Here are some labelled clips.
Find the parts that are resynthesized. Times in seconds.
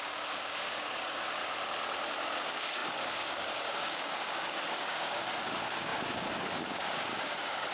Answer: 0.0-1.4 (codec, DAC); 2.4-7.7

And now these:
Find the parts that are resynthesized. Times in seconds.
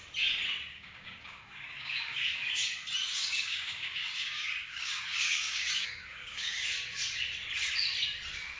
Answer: 0.7-2.5 (codec, DAC); 3.1-6.7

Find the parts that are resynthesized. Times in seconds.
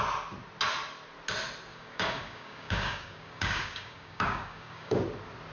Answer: 1.7-5.0 (codec, DAC)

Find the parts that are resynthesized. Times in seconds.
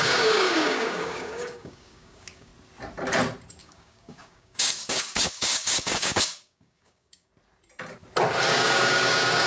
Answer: 0.0-2.5 (codec, DAC); 3.6-7.3; 8.5-9.5